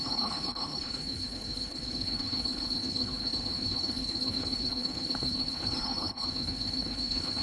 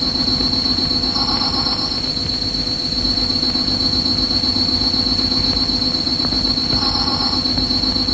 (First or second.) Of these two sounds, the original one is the second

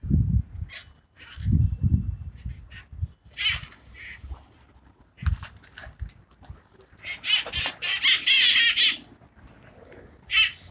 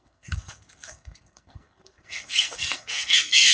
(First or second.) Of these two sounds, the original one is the first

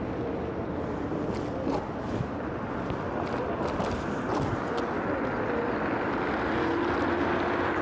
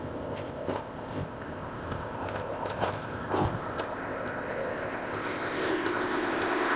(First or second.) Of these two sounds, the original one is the first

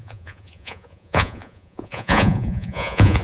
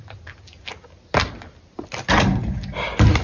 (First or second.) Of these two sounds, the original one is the second